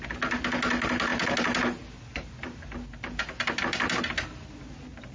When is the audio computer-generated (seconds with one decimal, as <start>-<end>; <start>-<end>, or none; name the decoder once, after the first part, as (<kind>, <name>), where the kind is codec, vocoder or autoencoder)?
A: none